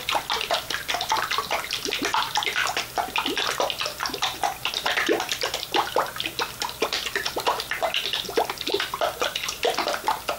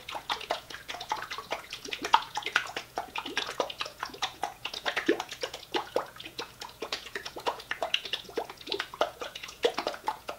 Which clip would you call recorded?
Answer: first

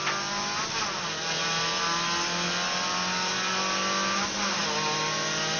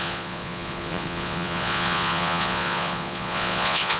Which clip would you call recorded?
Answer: first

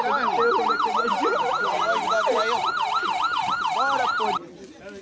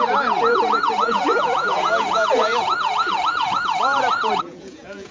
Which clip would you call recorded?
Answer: first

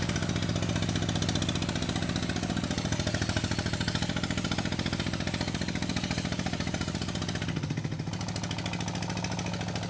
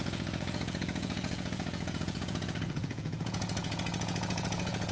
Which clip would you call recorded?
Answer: first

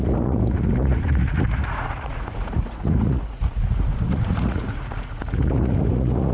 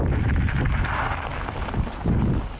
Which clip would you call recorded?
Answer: second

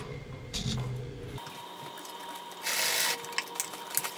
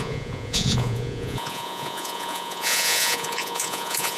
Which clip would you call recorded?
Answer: first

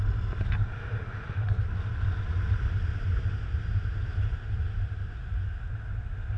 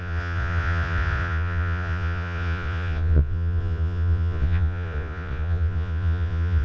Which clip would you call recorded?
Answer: first